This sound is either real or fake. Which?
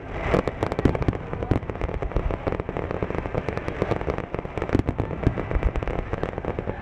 real